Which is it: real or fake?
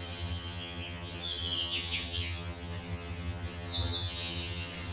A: fake